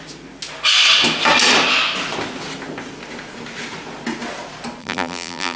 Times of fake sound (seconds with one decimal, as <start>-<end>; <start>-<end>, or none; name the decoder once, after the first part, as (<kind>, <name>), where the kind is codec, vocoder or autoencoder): 4.8-5.6 (vocoder, BigVGAN v2)